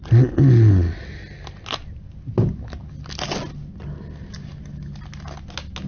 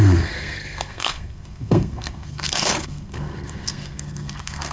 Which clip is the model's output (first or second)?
second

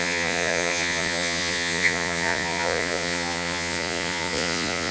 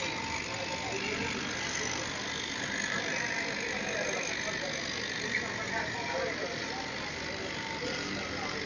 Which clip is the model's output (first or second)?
first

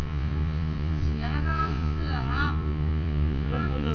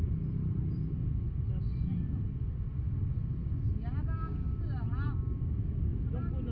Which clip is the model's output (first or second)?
first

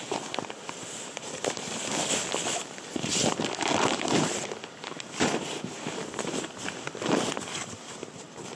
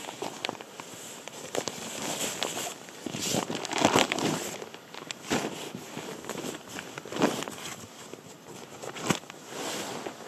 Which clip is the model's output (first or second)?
first